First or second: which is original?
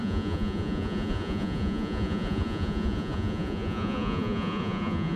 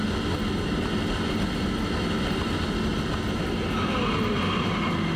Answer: second